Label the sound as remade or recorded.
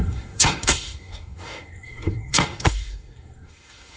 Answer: remade